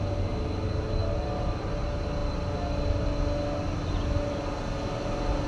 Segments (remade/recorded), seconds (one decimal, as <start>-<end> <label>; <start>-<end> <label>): 0.0-5.5 recorded